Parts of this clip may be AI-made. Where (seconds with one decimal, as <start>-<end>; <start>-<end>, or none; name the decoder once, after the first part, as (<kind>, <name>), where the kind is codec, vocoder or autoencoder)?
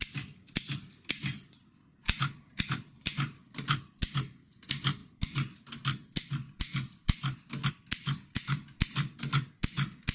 2.0-4.2 (vocoder, BigVGAN v2)